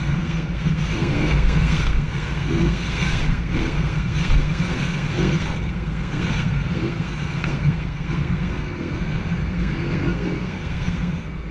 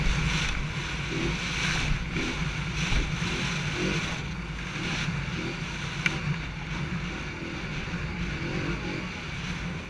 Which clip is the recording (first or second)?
second